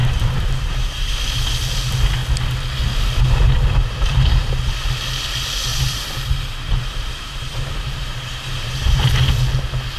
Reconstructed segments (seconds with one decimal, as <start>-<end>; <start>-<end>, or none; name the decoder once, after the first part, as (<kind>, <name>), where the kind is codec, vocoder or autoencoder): 0.0-1.1 (vocoder, BigVGAN v2); 5.7-9.1